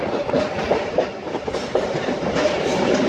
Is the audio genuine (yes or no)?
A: yes